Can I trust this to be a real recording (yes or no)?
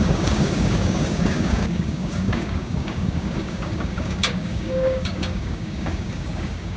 no